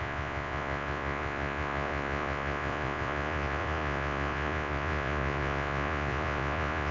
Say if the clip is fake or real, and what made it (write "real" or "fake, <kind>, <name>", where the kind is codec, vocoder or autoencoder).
fake, vocoder, Vocos